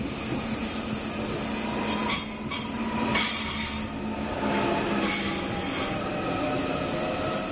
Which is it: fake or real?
real